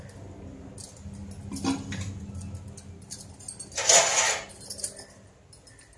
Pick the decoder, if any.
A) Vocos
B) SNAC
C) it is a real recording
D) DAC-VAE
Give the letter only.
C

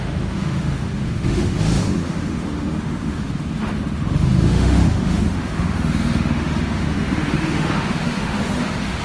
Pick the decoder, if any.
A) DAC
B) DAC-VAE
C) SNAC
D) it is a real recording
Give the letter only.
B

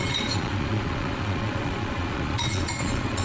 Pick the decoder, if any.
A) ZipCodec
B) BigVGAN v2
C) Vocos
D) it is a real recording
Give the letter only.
C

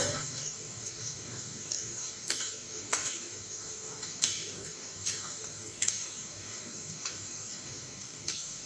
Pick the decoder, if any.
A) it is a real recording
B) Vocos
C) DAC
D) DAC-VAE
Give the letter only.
C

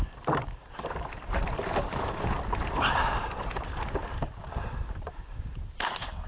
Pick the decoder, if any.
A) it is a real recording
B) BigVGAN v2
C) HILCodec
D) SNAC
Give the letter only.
B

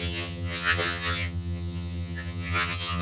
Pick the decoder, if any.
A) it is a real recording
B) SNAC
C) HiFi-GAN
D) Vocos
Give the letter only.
C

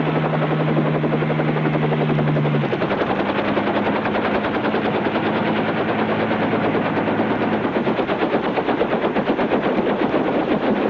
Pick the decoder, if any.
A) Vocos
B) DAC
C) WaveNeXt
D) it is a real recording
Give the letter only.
D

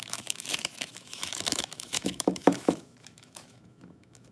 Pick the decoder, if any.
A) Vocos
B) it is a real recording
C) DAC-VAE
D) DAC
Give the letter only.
C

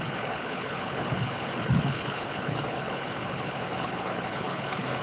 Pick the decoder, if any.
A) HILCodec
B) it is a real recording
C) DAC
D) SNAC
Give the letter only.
A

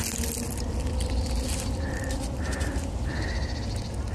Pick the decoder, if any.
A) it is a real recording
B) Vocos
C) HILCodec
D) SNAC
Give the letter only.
A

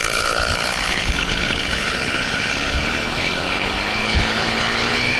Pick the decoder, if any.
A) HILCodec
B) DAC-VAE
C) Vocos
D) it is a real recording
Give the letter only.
A